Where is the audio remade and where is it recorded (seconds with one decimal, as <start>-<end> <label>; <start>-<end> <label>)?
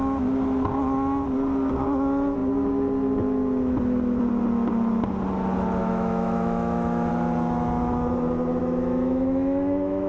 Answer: 0.0-5.8 recorded; 5.8-7.1 remade; 7.1-8.6 recorded; 8.6-10.1 remade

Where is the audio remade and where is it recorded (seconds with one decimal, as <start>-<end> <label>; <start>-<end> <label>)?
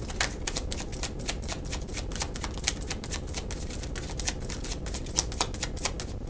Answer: 0.0-6.3 recorded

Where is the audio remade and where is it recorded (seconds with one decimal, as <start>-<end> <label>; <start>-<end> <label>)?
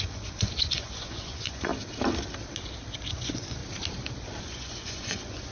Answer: 0.0-1.7 remade; 1.7-3.1 recorded; 3.1-3.6 remade; 3.6-4.4 recorded; 4.4-5.5 remade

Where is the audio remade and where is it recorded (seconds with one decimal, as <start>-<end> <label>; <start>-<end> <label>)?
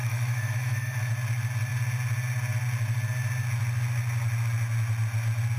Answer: 0.0-1.1 remade; 1.1-5.6 recorded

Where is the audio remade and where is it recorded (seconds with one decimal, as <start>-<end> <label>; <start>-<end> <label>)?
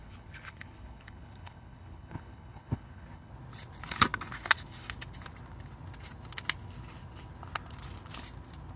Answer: 0.0-3.3 remade; 3.3-8.8 recorded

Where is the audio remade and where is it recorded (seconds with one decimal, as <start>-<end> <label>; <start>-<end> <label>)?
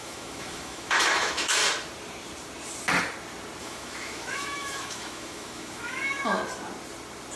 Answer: 0.0-1.6 remade; 1.6-3.6 recorded; 3.6-6.4 remade; 6.4-7.4 recorded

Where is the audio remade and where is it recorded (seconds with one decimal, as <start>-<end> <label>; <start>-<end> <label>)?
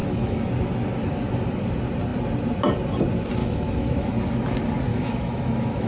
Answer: 0.0-0.5 remade; 0.5-3.4 recorded; 3.4-4.1 remade; 4.1-4.9 recorded; 4.9-5.9 remade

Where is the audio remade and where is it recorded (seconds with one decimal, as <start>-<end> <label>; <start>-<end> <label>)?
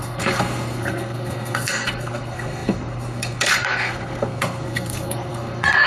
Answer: 0.0-5.9 remade